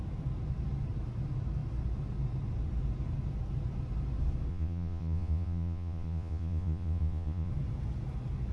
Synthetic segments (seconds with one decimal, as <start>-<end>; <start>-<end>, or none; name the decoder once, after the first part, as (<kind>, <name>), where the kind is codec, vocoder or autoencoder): 4.5-7.5 (vocoder, Vocos)